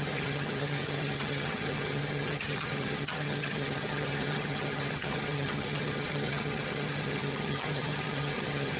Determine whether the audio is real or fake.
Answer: fake